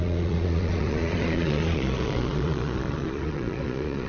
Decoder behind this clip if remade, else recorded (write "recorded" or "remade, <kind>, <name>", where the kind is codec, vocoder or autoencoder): remade, vocoder, Vocos